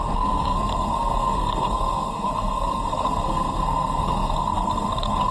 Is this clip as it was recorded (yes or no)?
no